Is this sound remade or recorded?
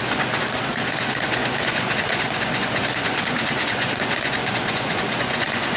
remade